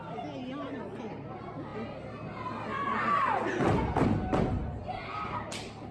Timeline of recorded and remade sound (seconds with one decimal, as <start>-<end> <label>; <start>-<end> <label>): 0.0-5.9 recorded